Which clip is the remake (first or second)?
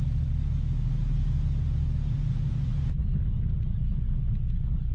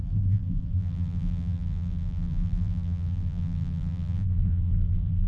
second